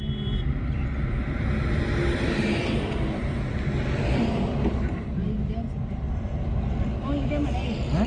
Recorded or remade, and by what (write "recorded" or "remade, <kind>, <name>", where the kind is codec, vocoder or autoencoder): recorded